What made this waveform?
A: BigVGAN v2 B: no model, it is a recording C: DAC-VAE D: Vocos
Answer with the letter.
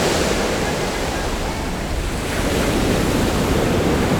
A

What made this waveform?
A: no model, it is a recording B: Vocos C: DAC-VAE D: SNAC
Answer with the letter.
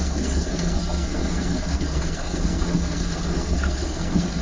D